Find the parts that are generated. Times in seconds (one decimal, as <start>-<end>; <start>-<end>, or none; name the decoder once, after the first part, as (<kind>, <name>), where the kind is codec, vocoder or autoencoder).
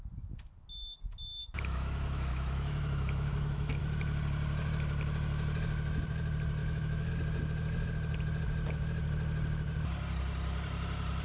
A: 1.4-3.8 (autoencoder, DAC-VAE); 6.6-7.1